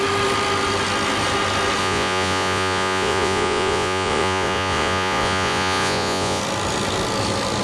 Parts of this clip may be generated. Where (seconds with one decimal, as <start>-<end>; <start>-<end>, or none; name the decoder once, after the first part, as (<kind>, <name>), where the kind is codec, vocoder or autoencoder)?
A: 1.8-6.4 (vocoder, Vocos)

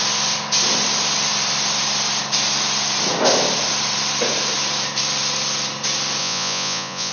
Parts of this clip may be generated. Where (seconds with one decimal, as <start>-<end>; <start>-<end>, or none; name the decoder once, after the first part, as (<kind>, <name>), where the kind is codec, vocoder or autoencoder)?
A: 6.2-7.1 (vocoder, Vocos)

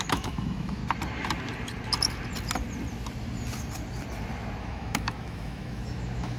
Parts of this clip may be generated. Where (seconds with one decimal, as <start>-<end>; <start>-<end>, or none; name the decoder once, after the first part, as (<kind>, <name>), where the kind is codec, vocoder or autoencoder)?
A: 0.0-0.8 (autoencoder, DAC-VAE); 4.6-6.4

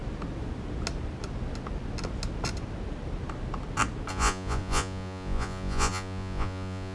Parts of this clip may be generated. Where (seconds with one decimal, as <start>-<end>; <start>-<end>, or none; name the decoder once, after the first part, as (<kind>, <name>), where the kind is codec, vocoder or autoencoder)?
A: 4.1-6.9 (vocoder, Vocos)

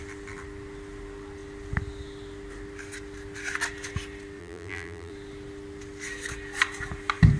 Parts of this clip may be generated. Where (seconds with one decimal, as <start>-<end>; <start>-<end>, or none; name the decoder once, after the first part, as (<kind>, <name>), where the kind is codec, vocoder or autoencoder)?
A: 4.4-5.1 (vocoder, BigVGAN v2)